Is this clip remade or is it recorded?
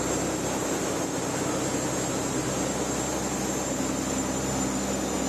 recorded